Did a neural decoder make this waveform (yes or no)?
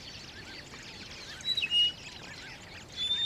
no